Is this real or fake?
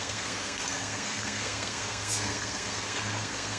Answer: fake